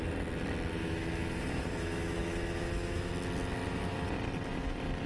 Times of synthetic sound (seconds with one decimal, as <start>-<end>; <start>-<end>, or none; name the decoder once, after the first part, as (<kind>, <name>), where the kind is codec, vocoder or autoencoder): 0.8-3.1 (autoencoder, DAC-VAE)